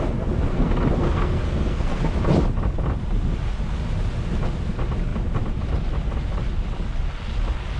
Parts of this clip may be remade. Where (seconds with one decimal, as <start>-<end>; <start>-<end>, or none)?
0.5-2.0